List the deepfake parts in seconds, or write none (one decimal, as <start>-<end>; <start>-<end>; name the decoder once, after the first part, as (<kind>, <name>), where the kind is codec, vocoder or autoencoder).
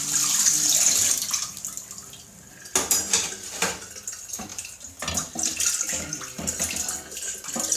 none